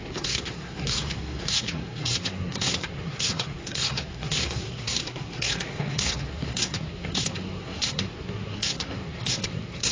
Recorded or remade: remade